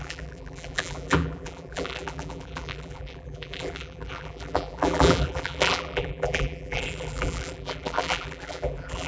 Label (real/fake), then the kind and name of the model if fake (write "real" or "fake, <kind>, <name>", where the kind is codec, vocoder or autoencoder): fake, vocoder, BigVGAN v2